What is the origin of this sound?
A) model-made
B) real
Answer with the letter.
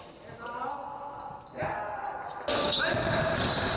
B